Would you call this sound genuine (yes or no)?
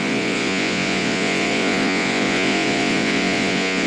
no